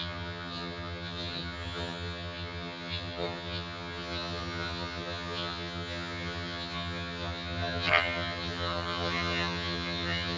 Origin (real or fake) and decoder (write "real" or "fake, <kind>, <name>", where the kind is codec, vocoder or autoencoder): fake, vocoder, HiFi-GAN